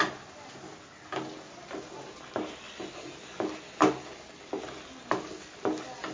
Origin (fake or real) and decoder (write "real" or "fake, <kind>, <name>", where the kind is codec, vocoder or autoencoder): real